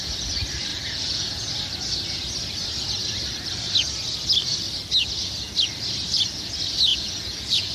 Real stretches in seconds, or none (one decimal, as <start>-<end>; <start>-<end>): 0.0-0.7; 1.5-6.9